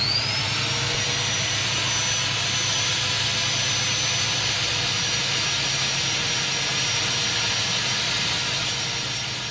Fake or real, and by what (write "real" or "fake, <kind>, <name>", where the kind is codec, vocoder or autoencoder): real